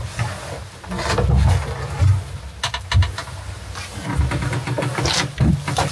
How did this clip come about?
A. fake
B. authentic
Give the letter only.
B